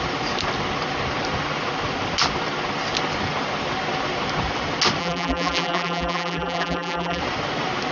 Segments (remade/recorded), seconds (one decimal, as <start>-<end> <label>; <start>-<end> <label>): 0.0-5.0 recorded; 5.0-7.2 remade; 7.2-7.9 recorded